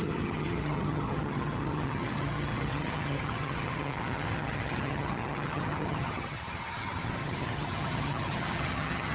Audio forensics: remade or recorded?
remade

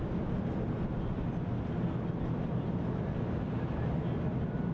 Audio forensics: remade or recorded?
recorded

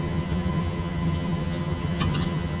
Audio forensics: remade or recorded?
remade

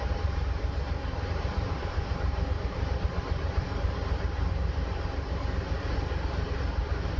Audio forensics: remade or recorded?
remade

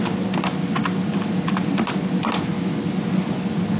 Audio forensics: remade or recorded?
recorded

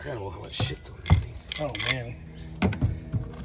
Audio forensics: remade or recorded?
recorded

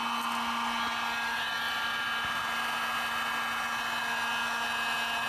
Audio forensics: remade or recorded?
recorded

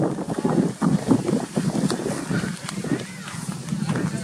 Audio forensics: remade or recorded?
recorded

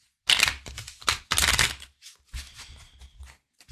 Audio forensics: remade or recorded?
recorded